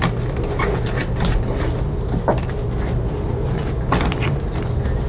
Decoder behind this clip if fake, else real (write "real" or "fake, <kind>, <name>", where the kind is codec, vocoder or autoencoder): real